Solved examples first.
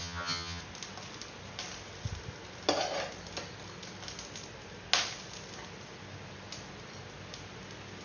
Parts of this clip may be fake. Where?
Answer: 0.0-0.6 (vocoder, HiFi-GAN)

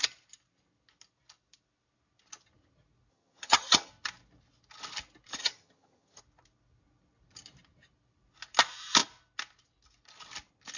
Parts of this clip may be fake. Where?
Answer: 3.1-3.9 (vocoder, HiFi-GAN); 5.3-6.2

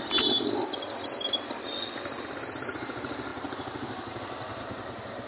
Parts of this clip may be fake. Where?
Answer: none

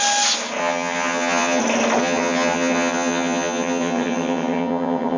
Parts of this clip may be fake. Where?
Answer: 0.6-1.6 (vocoder, HiFi-GAN); 2.0-5.2

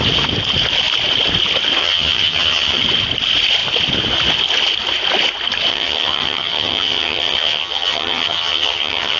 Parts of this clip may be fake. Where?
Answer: 1.8-2.8 (vocoder, HiFi-GAN); 5.7-9.2